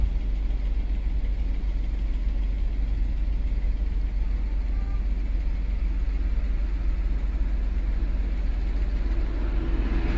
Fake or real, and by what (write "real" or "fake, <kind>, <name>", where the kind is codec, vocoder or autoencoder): real